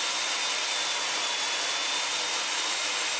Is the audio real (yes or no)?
yes